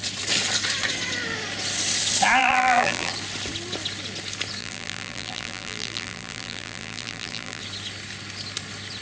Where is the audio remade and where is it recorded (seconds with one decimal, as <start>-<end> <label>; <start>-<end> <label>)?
0.0-2.4 recorded; 2.4-3.1 remade; 3.1-4.6 recorded; 4.6-7.6 remade; 7.6-9.0 recorded